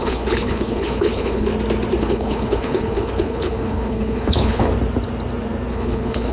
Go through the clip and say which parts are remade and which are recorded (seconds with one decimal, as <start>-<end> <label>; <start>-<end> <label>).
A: 0.0-1.5 remade; 1.5-2.0 recorded; 2.0-4.7 remade; 4.7-5.7 recorded; 5.7-6.3 remade